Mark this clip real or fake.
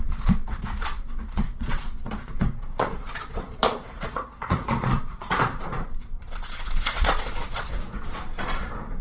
fake